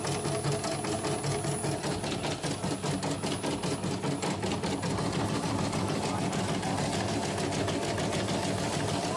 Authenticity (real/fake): real